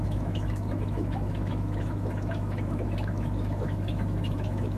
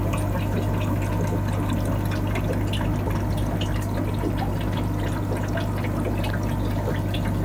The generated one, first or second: first